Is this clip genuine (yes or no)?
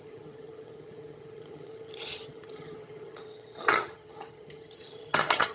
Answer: no